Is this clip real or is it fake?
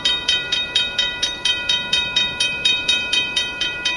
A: fake